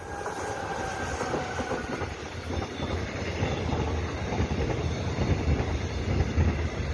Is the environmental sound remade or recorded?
recorded